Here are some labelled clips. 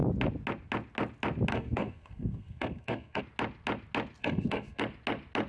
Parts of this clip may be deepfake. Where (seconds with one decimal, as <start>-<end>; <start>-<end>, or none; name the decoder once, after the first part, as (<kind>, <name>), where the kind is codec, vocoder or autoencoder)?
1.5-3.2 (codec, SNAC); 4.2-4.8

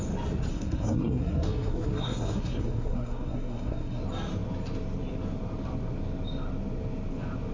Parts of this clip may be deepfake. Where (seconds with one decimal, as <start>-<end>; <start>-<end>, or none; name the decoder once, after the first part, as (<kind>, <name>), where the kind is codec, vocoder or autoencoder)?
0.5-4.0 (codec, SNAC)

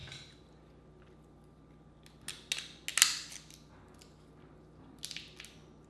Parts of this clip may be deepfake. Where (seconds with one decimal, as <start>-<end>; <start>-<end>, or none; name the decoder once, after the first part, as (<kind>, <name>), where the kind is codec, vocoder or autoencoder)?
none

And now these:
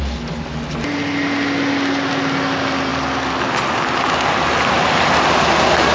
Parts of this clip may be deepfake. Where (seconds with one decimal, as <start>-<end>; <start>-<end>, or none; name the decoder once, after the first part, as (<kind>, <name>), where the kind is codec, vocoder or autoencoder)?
none